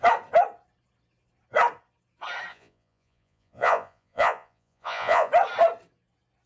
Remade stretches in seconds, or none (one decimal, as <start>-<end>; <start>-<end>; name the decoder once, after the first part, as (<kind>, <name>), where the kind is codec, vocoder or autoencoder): 2.5-5.3 (vocoder, Vocos)